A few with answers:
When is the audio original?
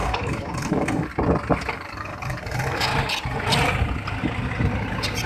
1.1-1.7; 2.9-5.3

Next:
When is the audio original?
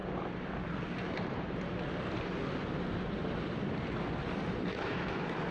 0.0-4.7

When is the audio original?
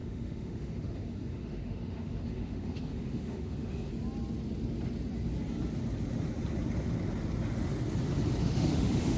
3.9-8.4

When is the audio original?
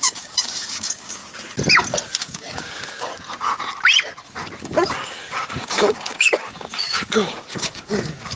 1.2-2.2; 3.1-4.6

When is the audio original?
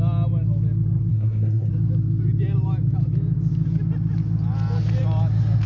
0.0-1.1; 1.7-5.7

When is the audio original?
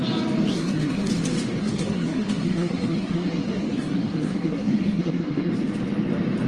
0.0-0.5; 1.1-1.6; 5.5-6.5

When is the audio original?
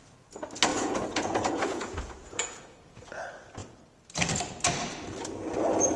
0.0-0.7; 3.2-6.0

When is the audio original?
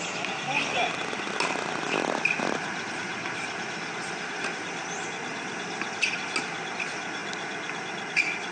0.0-8.5